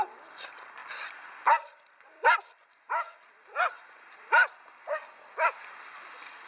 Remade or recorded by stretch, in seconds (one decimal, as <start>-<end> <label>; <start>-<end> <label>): 0.0-6.5 recorded